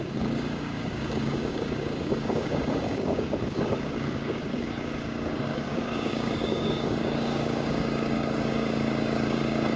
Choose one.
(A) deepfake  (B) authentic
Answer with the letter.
A